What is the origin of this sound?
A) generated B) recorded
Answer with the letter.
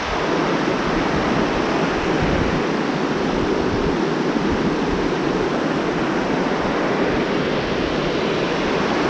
B